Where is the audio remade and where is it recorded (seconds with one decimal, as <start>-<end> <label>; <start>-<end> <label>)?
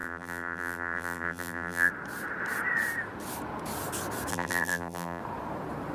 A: 0.0-1.9 remade; 1.9-4.3 recorded; 4.3-5.2 remade; 5.2-5.9 recorded